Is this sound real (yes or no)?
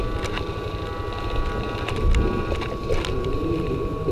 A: yes